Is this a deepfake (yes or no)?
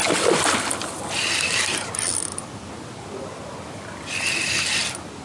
no